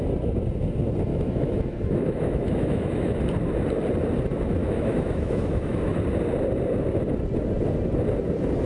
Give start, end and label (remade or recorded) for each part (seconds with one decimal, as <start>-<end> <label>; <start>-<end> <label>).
0.0-1.1 recorded; 1.1-3.2 remade; 3.2-4.6 recorded; 4.6-6.0 remade; 6.0-8.7 recorded